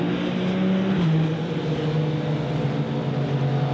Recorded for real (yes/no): yes